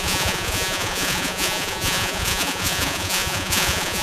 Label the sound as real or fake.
fake